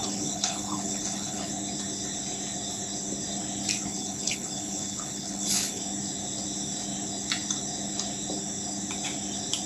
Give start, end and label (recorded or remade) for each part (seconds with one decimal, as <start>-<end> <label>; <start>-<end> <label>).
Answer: 0.0-1.5 remade; 1.5-3.9 recorded; 3.9-5.8 remade; 5.8-9.7 recorded